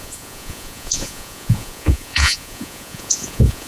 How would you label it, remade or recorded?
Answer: remade